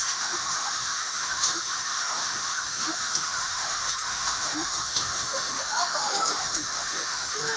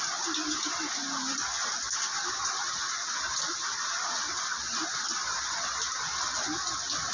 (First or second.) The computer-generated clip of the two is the first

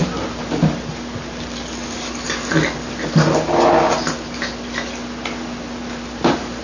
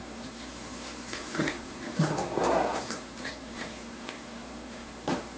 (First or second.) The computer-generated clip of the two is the second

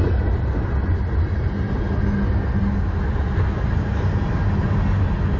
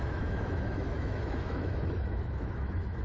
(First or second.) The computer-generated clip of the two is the second